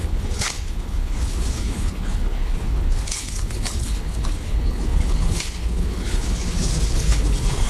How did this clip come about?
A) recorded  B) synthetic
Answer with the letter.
B